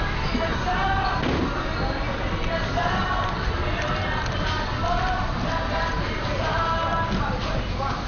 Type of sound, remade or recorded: recorded